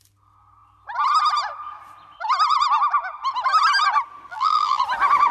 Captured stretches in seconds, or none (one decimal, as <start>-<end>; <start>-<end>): 0.0-4.3; 4.8-5.3